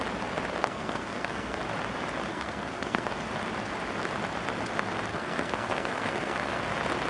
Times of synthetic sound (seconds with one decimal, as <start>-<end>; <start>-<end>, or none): 0.6-1.6; 2.3-3.1; 5.1-6.6